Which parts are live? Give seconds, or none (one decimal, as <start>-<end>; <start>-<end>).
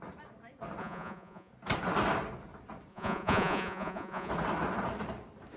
0.0-0.8; 1.5-2.9; 4.3-5.6